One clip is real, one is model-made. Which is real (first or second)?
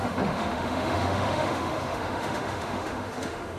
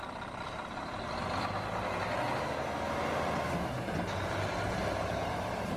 second